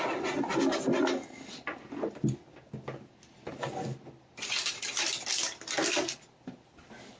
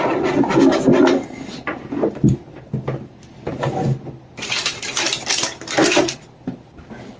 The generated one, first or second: second